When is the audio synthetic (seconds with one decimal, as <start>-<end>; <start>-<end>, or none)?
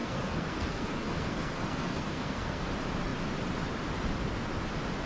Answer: 0.0-2.7